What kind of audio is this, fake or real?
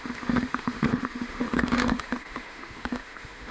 fake